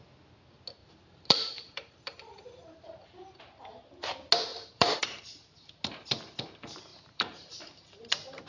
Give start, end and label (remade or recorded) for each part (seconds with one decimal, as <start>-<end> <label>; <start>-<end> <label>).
0.0-0.8 recorded; 0.8-3.4 remade; 3.4-4.5 recorded; 4.5-5.2 remade; 5.2-6.9 recorded; 6.9-7.8 remade; 7.8-8.5 recorded